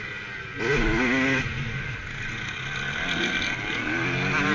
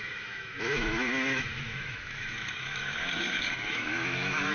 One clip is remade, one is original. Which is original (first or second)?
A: first